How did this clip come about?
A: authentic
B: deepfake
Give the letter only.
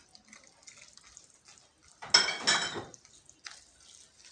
A